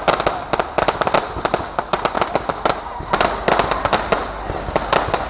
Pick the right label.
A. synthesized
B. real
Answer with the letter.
B